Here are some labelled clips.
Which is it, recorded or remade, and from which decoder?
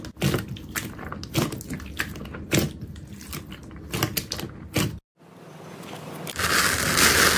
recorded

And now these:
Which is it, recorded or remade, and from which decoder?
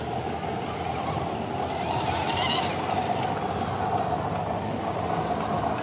recorded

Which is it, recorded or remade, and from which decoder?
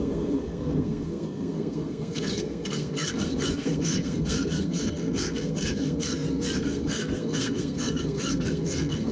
remade, codec, SNAC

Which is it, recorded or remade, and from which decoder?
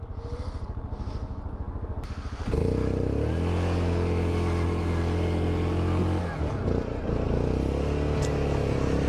recorded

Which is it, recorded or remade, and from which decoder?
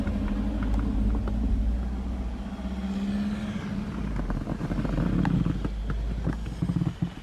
recorded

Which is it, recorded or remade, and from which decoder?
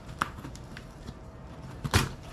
remade, vocoder, BigVGAN v2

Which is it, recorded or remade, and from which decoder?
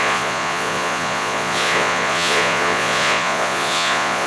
remade, vocoder, Vocos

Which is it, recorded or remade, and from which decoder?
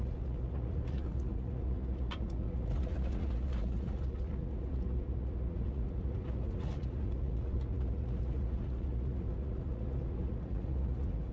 remade, vocoder, Vocos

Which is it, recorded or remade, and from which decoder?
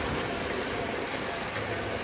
recorded